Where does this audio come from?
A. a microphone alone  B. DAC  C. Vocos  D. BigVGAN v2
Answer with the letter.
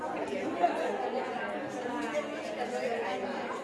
A